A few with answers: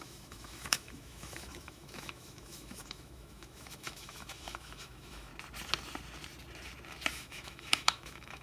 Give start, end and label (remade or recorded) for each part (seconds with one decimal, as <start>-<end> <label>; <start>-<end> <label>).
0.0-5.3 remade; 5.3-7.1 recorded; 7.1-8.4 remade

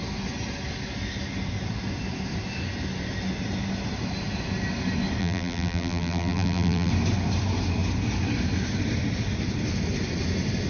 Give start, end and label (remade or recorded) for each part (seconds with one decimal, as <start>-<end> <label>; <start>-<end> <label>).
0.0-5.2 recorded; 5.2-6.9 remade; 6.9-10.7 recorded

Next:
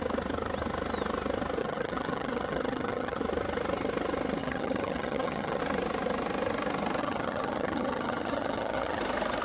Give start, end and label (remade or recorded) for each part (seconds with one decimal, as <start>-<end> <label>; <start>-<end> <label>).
0.0-1.6 recorded; 1.6-3.2 remade; 3.2-4.4 recorded; 4.4-5.6 remade; 5.6-7.0 recorded; 7.0-9.0 remade; 9.0-9.4 recorded

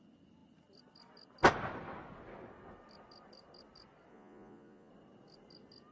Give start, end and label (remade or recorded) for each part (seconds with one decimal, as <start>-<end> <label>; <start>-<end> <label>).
0.0-4.1 recorded; 4.1-4.9 remade; 4.9-5.9 recorded

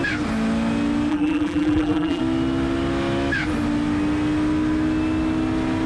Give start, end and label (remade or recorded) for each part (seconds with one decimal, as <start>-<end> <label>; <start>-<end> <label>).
0.0-1.1 recorded; 1.1-2.2 remade; 2.2-5.9 recorded

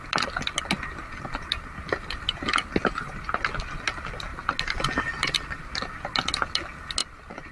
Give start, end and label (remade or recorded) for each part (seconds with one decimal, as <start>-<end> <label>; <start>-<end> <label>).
0.0-7.5 recorded